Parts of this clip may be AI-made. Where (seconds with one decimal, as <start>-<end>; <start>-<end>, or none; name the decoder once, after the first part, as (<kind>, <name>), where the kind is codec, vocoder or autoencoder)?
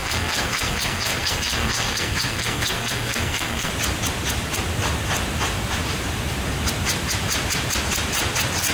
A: 0.0-3.7 (codec, SNAC)